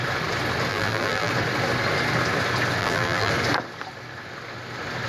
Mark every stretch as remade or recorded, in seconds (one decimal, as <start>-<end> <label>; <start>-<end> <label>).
0.0-0.7 recorded; 0.7-1.3 remade; 1.3-2.8 recorded; 2.8-3.3 remade; 3.3-5.1 recorded